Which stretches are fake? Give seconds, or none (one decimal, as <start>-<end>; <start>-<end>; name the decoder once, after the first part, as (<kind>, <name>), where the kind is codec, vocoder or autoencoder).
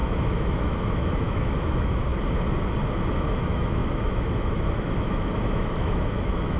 0.0-2.1 (autoencoder, DAC-VAE); 3.2-6.6